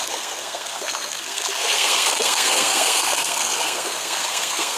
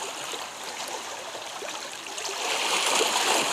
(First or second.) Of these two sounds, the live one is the second